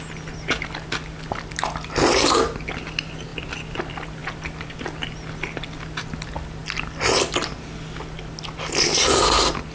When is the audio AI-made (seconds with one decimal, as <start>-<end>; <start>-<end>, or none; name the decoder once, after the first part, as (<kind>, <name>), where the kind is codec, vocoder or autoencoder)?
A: none